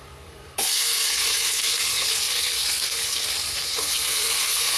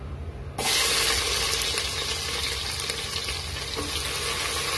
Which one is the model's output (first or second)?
first